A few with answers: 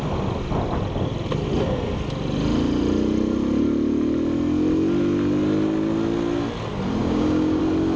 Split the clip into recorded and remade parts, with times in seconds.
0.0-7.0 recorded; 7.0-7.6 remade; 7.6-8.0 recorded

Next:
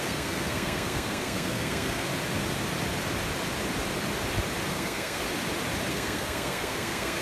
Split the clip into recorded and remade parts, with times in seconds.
0.0-2.1 remade; 2.1-4.7 recorded; 4.7-5.2 remade; 5.2-5.9 recorded; 5.9-7.2 remade

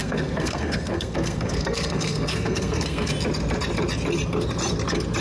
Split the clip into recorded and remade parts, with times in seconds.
0.0-3.1 remade; 3.1-5.2 recorded